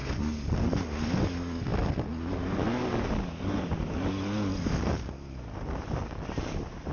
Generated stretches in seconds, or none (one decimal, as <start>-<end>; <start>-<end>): none